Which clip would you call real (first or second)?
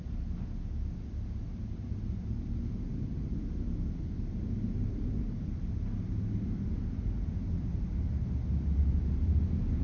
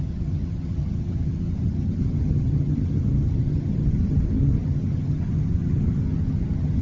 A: first